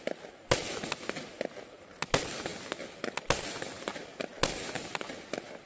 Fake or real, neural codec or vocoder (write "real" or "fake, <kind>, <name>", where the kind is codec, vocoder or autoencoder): real